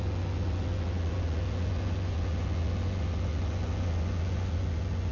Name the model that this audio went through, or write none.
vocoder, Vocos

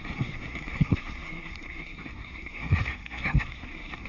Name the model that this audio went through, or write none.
codec, SNAC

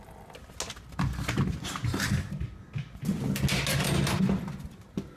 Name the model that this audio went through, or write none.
none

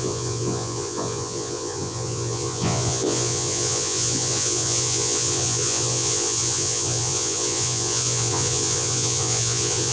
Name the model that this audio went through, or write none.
vocoder, Vocos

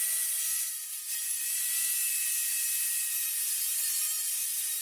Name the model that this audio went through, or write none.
none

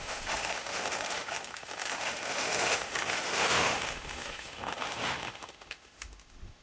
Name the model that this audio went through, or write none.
autoencoder, DAC-VAE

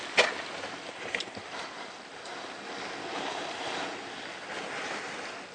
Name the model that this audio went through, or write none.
none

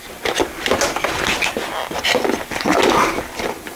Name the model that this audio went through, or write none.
none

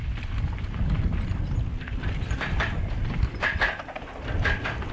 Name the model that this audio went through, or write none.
vocoder, BigVGAN v2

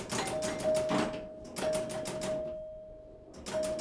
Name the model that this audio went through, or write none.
none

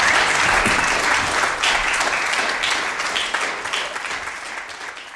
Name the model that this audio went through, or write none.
none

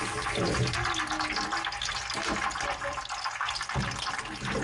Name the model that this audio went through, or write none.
none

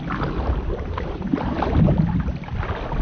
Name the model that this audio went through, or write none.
none